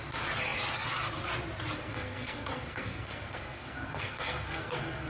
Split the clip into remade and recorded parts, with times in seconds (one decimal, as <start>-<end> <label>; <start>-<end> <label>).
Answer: 0.0-1.8 recorded; 1.8-5.1 remade